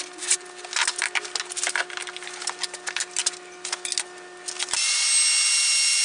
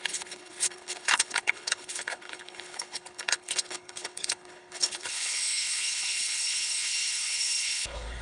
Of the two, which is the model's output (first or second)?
second